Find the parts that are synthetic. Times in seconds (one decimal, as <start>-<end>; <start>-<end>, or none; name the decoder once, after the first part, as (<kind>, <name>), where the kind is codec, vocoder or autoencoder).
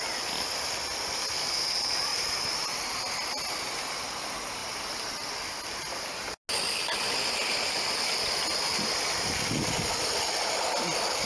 none